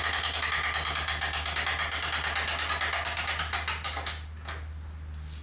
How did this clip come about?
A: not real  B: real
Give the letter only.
B